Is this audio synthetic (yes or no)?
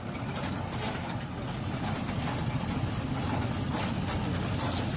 no